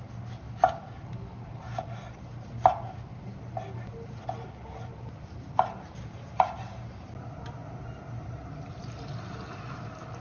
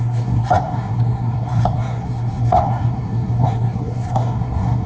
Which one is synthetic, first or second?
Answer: second